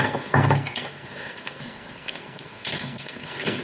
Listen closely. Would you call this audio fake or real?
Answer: fake